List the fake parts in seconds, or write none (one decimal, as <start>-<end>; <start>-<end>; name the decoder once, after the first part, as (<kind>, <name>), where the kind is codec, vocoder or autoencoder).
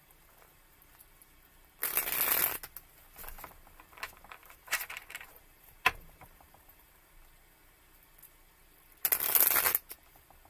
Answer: 4.4-7.0 (vocoder, BigVGAN v2)